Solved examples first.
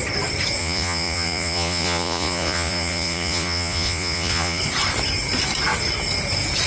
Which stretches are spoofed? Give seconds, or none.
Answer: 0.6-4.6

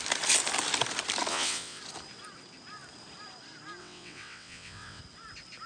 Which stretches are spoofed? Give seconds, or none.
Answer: 1.3-1.8; 3.8-5.0

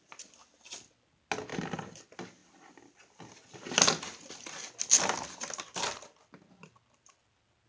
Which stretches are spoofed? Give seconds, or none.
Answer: 1.5-2.0

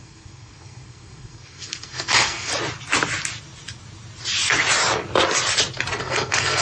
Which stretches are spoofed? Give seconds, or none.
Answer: 0.0-2.5; 6.0-6.6